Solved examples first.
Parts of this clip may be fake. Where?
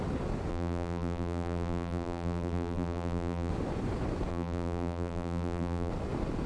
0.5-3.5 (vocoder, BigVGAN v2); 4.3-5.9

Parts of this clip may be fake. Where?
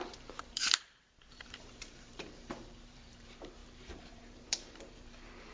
0.0-5.5 (vocoder, BigVGAN v2)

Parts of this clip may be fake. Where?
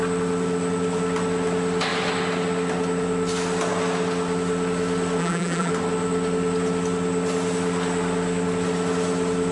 5.2-5.7 (vocoder, BigVGAN v2)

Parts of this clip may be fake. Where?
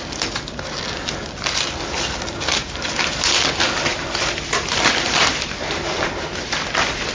3.9-7.1 (vocoder, BigVGAN v2)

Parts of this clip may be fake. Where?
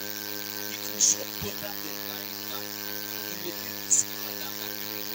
0.0-1.6 (vocoder, BigVGAN v2); 2.3-5.1